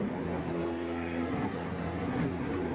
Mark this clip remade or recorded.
remade